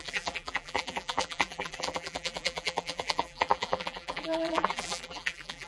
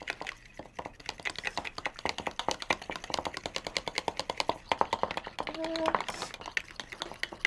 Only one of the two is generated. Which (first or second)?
first